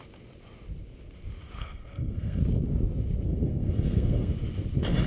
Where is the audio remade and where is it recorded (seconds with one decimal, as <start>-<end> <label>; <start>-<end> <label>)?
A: 0.0-1.6 recorded; 1.6-2.4 remade; 2.4-3.3 recorded; 3.3-4.3 remade; 4.3-5.1 recorded